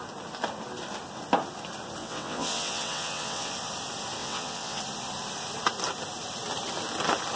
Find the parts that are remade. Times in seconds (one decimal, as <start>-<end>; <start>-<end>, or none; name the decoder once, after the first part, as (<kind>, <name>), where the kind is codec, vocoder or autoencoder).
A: 2.0-3.5 (vocoder, WaveNeXt); 4.2-4.8